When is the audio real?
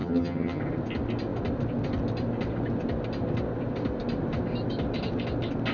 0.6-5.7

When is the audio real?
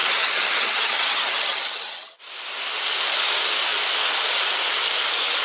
2.2-5.4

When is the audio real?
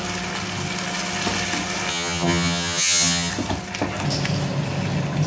0.0-1.9; 3.3-5.3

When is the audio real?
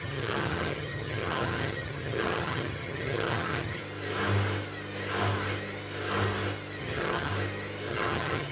3.8-6.8; 7.3-7.9